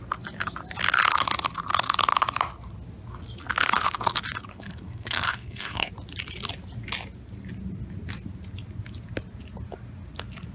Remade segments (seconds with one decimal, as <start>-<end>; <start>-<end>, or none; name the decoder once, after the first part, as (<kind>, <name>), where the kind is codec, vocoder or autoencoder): 4.5-5.9 (codec, SNAC)